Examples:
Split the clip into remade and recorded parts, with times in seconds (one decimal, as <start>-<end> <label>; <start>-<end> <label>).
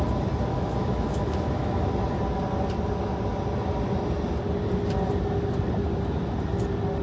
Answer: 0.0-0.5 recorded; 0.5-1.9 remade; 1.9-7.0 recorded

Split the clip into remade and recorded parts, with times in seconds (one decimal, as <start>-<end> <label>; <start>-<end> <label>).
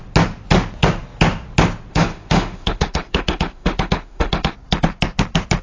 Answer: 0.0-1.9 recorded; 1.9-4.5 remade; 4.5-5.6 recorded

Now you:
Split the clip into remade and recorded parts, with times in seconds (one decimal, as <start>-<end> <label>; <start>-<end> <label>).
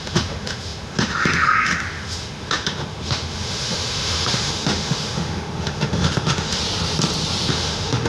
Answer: 0.0-6.6 remade; 6.6-7.5 recorded; 7.5-8.1 remade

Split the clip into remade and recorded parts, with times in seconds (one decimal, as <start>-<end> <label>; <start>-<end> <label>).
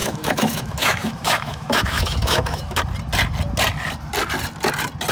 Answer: 0.0-2.8 remade; 2.8-5.1 recorded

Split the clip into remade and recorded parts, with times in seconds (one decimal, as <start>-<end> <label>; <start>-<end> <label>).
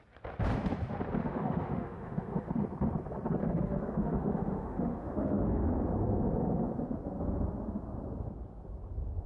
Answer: 0.0-1.2 recorded; 1.2-2.5 remade; 2.5-3.4 recorded; 3.4-5.7 remade; 5.7-9.3 recorded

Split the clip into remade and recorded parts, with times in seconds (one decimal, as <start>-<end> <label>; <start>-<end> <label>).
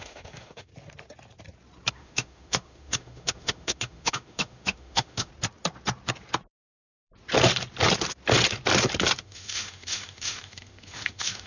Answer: 0.0-0.7 remade; 0.7-1.9 recorded; 1.9-5.3 remade; 5.3-9.2 recorded; 9.2-11.5 remade